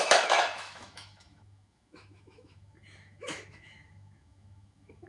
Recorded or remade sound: remade